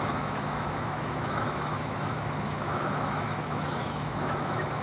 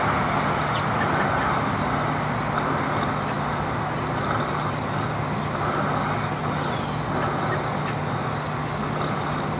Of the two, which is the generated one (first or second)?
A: first